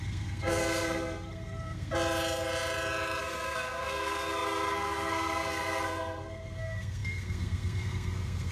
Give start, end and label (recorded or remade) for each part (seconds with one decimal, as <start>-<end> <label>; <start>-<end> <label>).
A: 0.0-1.9 remade; 1.9-3.2 recorded; 3.2-8.5 remade